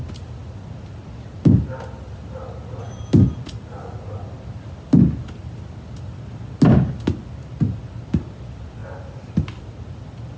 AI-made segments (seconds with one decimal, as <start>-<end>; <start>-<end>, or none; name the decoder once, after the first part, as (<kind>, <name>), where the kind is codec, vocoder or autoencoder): none